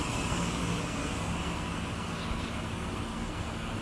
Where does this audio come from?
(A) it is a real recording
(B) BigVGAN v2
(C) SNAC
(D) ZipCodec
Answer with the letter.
C